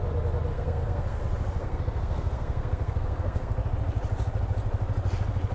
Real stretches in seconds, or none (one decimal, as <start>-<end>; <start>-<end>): 0.0-0.5; 1.2-1.6; 3.5-5.5